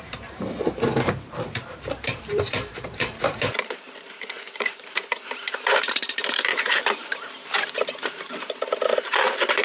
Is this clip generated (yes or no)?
yes